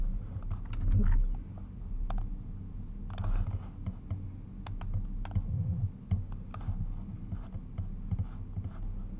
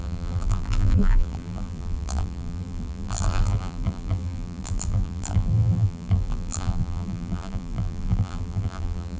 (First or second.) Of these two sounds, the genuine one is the first